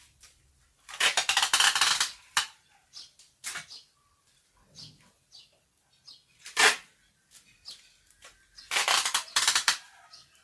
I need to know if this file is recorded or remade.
remade